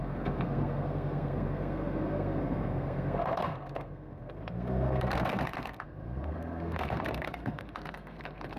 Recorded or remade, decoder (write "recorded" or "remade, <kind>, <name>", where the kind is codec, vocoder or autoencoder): remade, codec, SNAC